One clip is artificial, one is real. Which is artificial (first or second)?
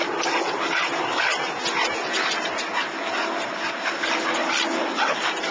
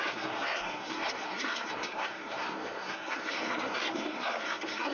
second